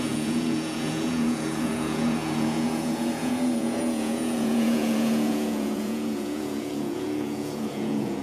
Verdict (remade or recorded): remade